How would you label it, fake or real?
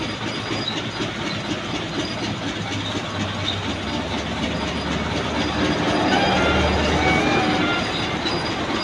real